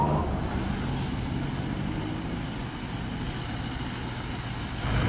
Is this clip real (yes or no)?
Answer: yes